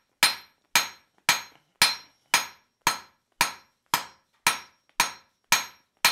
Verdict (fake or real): real